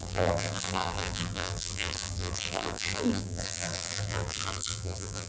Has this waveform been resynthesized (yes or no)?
yes